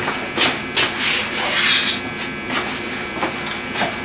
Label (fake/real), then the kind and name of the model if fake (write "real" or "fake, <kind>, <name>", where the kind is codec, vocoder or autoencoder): real